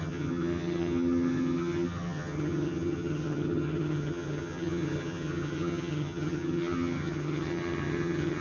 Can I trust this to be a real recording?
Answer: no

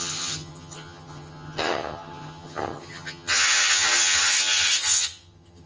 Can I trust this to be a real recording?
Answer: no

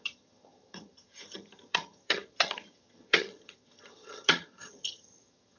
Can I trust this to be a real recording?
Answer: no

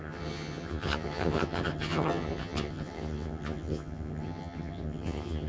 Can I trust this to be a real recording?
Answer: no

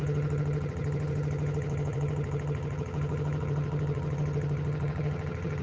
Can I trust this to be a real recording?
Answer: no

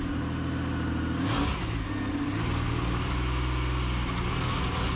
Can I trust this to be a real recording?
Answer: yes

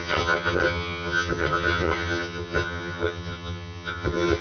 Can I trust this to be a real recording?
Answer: no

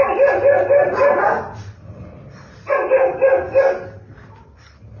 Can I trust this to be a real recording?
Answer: yes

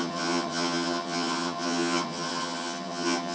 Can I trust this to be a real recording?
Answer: no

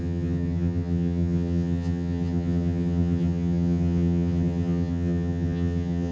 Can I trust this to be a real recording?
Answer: no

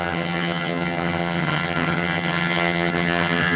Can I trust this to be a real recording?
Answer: no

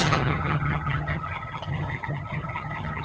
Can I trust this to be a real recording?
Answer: no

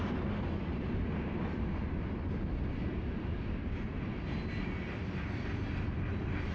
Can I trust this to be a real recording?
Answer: yes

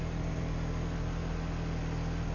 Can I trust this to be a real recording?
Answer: yes